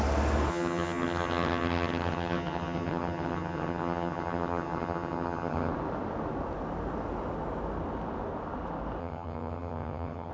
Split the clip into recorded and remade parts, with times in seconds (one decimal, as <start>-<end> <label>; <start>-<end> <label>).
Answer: 0.0-0.5 recorded; 0.5-5.7 remade; 5.7-9.0 recorded; 9.0-10.3 remade